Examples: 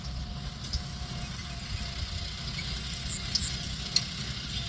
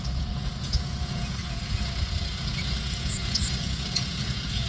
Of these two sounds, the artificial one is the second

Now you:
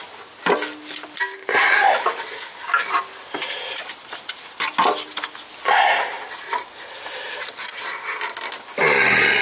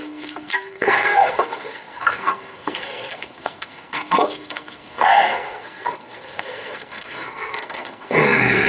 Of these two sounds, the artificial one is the second